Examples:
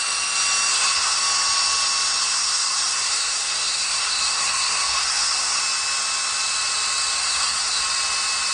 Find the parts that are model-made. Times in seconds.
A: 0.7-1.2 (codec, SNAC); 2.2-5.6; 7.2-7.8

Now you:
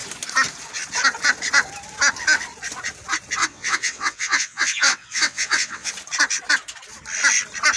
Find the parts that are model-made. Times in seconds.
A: 3.4-5.9 (vocoder, WaveNeXt)

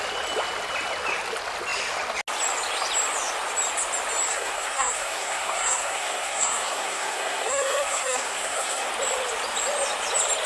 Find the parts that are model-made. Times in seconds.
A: 4.3-8.9 (codec, SNAC)

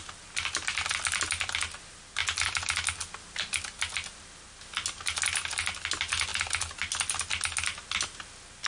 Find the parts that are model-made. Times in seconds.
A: none

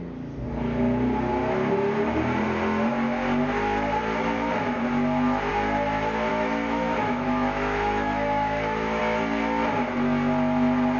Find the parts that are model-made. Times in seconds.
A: 6.3-9.0 (autoencoder, DAC-VAE)

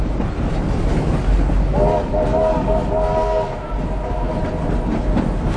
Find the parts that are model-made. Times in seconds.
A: 0.9-4.3 (codec, DAC)